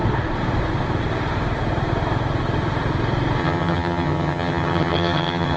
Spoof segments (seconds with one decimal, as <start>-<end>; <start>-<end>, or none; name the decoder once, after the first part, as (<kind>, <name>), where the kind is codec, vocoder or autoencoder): 3.4-5.6 (vocoder, HiFi-GAN)